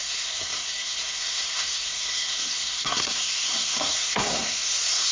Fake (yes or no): yes